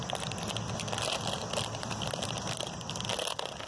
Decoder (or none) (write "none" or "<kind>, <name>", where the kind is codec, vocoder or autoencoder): none